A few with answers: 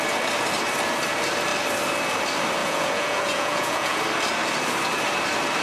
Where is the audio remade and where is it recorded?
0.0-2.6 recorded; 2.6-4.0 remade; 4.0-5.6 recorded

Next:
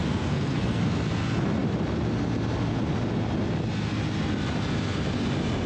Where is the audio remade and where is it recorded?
0.0-0.8 remade; 0.8-5.7 recorded

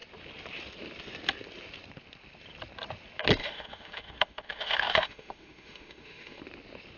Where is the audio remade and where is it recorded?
0.0-3.4 recorded; 3.4-6.4 remade; 6.4-7.0 recorded